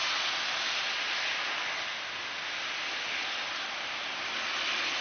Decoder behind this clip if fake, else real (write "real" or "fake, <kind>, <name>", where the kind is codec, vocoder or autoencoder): real